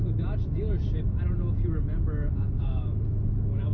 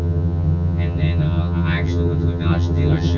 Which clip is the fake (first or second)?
second